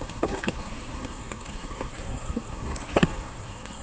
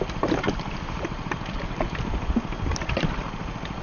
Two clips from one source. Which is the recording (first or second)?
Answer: second